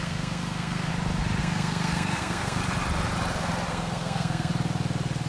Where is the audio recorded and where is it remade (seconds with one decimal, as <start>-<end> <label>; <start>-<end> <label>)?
0.0-0.9 remade; 0.9-1.4 recorded; 1.4-2.6 remade; 2.6-3.7 recorded; 3.7-4.5 remade; 4.5-5.3 recorded